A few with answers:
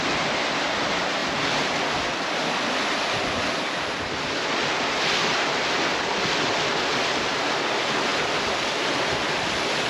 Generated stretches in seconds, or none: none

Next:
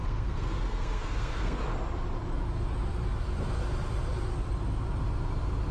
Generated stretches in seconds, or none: 0.0-1.6 (codec, SNAC)